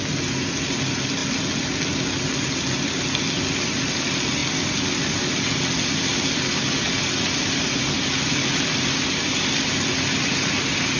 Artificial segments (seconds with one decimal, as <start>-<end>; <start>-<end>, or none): none